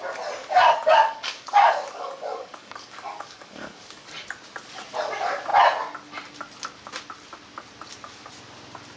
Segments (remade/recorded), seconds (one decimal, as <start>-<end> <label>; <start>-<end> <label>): 0.0-0.4 recorded; 0.4-4.3 remade; 4.3-9.0 recorded